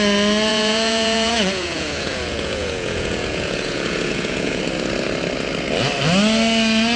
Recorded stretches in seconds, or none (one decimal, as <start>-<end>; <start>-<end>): 0.0-0.5; 4.6-7.0